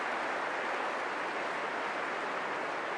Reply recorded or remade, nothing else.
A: recorded